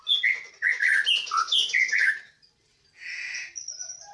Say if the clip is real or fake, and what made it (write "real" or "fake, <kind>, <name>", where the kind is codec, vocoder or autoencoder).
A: real